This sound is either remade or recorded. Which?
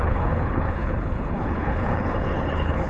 remade